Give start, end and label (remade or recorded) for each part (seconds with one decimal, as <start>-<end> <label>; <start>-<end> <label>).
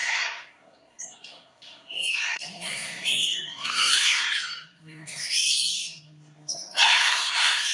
0.0-7.7 remade